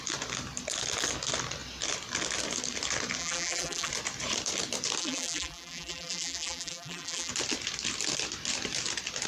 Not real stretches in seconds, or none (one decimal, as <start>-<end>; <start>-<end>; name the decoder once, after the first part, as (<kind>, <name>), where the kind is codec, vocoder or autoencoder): 3.2-3.9 (vocoder, BigVGAN v2); 5.0-7.3